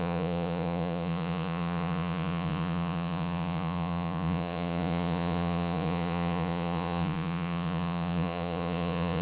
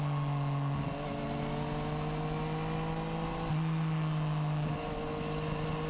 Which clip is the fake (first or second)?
first